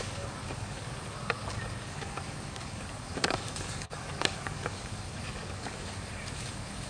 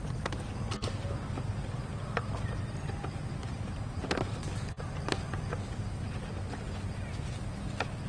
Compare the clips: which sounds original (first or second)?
second